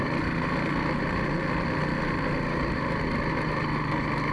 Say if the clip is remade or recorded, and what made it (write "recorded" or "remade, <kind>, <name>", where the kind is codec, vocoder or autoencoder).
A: recorded